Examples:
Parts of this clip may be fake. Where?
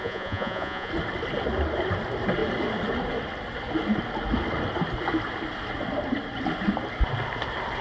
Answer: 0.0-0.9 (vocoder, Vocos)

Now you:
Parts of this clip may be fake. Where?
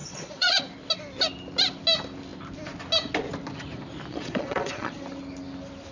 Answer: 0.0-0.6 (vocoder, Vocos); 4.1-5.0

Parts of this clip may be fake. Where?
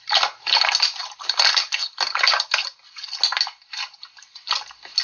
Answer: none